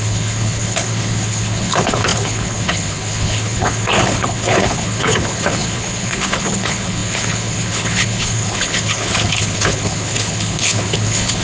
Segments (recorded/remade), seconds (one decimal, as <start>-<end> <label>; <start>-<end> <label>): 0.0-11.4 remade